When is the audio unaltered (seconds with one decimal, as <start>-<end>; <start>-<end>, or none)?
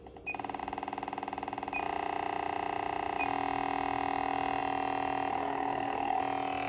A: 0.0-5.3; 6.2-6.7